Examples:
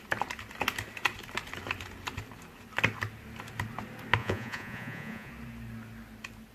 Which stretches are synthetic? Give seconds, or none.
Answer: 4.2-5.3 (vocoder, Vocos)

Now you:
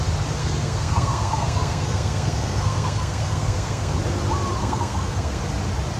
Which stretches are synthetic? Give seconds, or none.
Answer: 0.4-3.9 (codec, SNAC); 4.6-5.4

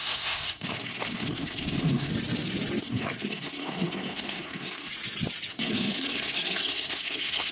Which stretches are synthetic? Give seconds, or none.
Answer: 0.0-2.1 (codec, SNAC); 2.8-4.9; 5.5-7.5

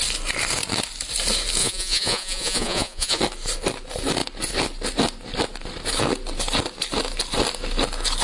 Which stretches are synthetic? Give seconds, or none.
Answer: 1.6-3.2 (vocoder, Vocos)

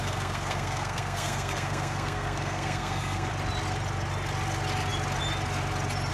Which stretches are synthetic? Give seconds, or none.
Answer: 0.0-3.3 (codec, SNAC)

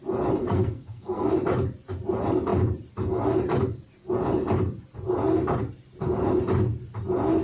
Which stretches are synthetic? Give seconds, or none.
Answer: 0.4-1.3 (codec, SNAC)